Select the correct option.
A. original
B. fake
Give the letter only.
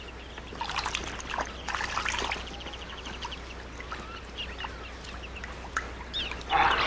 A